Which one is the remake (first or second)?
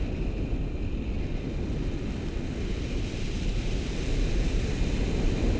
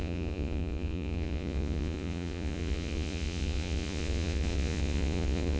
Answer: second